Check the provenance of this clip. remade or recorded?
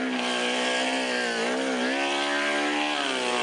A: recorded